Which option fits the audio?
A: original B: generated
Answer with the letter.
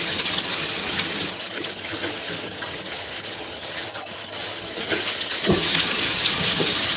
B